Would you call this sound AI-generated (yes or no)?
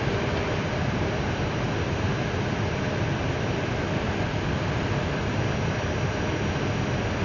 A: no